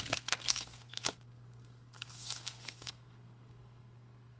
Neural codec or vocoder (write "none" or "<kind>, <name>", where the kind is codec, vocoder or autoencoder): codec, SNAC